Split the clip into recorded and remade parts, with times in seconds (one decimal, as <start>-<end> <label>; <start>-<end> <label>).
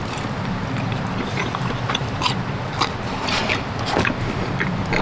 0.0-2.0 recorded; 2.0-3.4 remade; 3.4-5.0 recorded